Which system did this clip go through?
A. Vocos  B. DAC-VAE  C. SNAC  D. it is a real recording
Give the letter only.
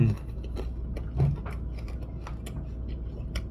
D